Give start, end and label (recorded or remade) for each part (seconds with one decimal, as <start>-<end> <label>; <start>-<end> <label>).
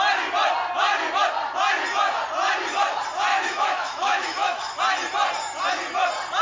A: 0.0-3.3 recorded; 3.3-4.8 remade; 4.8-6.4 recorded